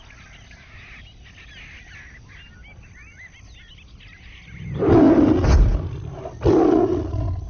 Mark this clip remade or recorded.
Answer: recorded